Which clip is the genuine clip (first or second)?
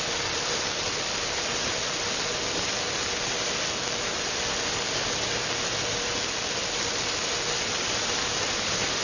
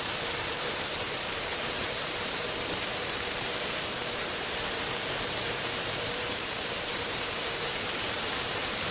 first